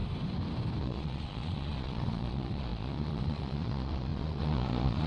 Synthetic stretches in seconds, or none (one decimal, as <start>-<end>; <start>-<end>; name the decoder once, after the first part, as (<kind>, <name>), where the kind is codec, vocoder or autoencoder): 0.8-5.1 (vocoder, Vocos)